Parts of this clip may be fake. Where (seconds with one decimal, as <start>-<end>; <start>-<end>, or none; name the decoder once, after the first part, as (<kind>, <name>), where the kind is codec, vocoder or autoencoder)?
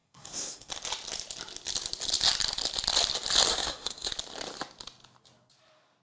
0.0-0.7 (codec, SNAC); 3.5-4.1